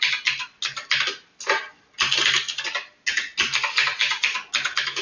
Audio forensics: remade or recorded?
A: recorded